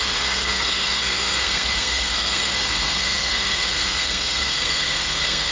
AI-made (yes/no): yes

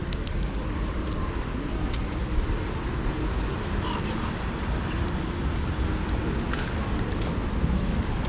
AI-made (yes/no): no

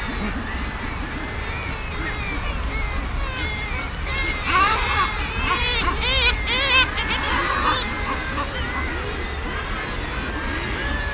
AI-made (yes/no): no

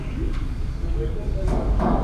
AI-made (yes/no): yes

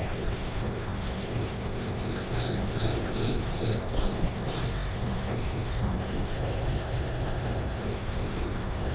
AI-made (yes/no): yes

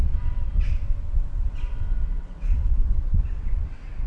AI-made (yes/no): yes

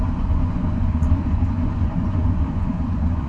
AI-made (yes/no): yes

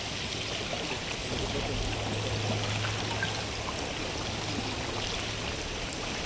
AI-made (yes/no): no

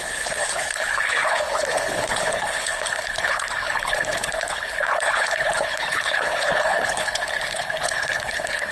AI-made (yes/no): yes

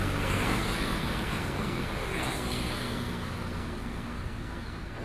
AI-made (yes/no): yes